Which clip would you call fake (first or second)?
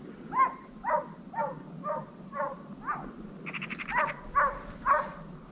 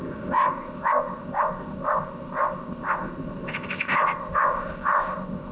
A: second